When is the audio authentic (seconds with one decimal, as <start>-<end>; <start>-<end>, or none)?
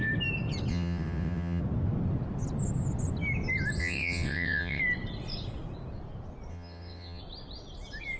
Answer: 0.0-0.7; 1.6-3.8; 4.8-6.5; 7.2-8.2